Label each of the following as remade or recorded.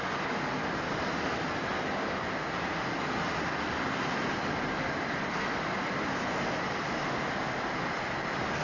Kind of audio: recorded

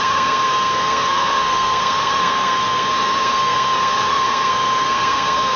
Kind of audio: remade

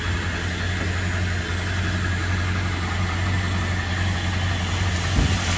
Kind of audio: recorded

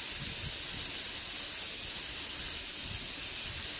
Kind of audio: recorded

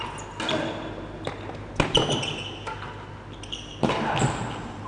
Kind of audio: recorded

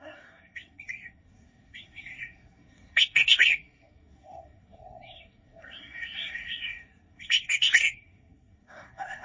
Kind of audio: remade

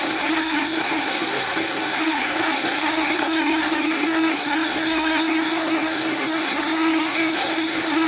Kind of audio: remade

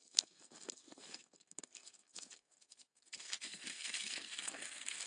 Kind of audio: remade